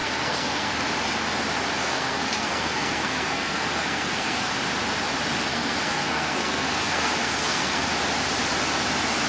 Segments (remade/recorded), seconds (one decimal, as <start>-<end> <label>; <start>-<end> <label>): 0.0-0.7 remade; 0.7-1.8 recorded; 1.8-4.5 remade; 4.5-5.5 recorded; 5.5-7.9 remade; 7.9-9.3 recorded